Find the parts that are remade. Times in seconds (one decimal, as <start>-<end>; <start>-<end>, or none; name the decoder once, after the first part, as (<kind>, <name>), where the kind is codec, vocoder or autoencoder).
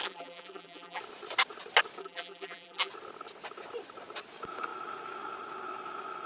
0.0-1.0 (vocoder, BigVGAN v2); 2.0-2.9